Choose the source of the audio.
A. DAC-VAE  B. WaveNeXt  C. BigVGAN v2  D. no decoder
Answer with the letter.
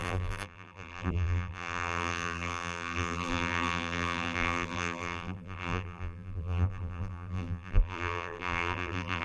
C